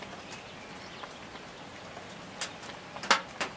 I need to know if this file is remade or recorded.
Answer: recorded